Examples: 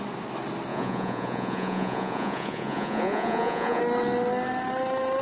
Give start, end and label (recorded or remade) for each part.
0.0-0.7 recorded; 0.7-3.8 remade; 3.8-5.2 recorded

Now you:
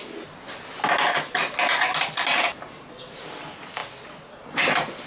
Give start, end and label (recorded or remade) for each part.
0.0-5.1 recorded

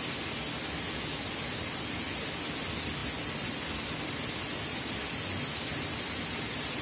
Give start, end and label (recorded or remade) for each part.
0.0-6.8 recorded

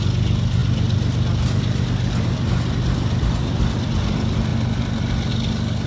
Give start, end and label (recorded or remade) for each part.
0.0-5.9 recorded

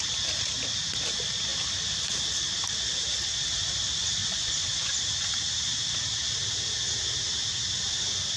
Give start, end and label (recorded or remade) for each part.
0.0-4.2 recorded; 4.2-4.9 remade; 4.9-8.4 recorded

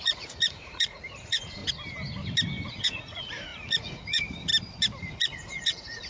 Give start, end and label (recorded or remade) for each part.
0.0-1.6 remade; 1.6-2.8 recorded; 2.8-4.5 remade; 4.5-5.0 recorded; 5.0-6.1 remade

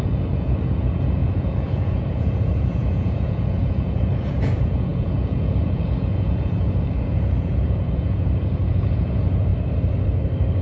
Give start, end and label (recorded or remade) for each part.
0.0-9.5 remade; 9.5-10.6 recorded

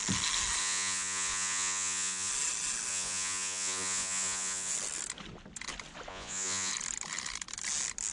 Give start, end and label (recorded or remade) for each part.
0.0-0.6 recorded; 0.6-2.3 remade; 2.3-2.9 recorded; 2.9-4.7 remade; 4.7-6.1 recorded; 6.1-6.7 remade; 6.7-8.1 recorded